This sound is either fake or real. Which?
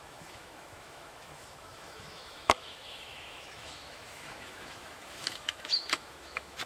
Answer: fake